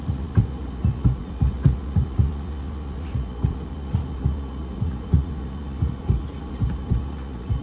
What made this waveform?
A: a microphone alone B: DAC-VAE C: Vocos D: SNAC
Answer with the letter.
C